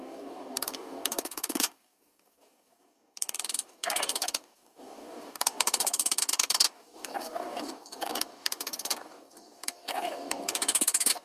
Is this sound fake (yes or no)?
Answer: yes